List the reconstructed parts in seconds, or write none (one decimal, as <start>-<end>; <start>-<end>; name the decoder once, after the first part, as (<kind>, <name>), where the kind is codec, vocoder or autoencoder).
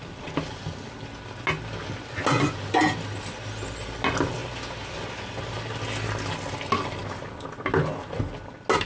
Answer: none